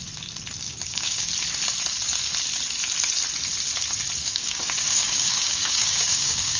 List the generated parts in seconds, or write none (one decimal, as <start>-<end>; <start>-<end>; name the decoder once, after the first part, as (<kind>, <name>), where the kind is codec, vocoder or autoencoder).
0.6-1.3 (codec, DAC); 4.2-6.6